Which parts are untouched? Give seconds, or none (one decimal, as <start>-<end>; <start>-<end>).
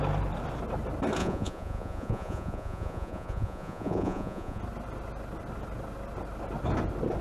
0.0-1.2; 4.6-7.2